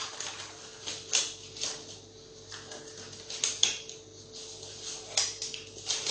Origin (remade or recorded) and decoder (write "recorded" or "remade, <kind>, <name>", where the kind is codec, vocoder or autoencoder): recorded